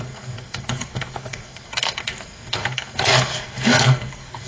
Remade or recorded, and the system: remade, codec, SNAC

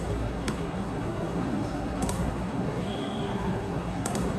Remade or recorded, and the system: remade, codec, SNAC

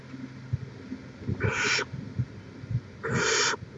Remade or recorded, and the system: recorded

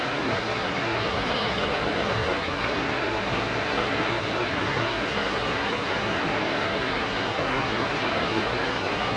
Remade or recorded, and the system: remade, codec, SNAC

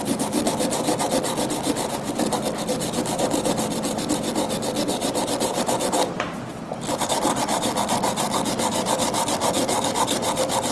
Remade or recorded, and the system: recorded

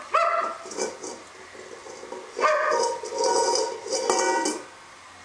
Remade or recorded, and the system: recorded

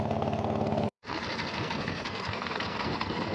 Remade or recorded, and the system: remade, codec, SNAC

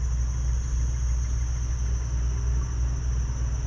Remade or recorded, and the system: recorded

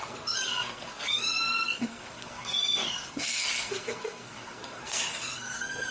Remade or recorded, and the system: remade, codec, SNAC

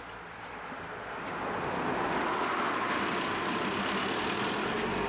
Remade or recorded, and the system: recorded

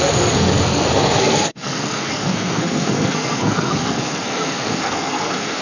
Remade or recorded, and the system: remade, codec, SNAC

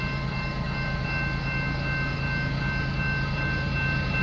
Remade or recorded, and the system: recorded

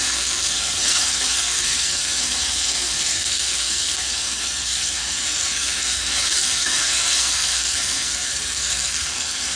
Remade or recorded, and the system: remade, codec, SNAC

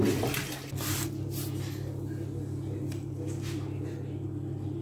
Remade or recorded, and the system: recorded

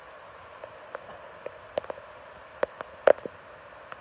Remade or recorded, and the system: recorded